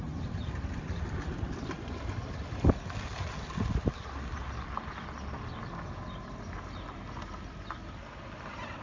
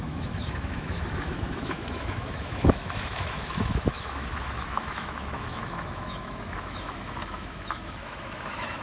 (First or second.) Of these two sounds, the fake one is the second